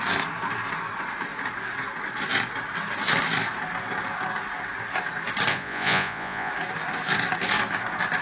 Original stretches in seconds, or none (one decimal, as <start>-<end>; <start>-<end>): 0.0-5.5; 6.5-8.2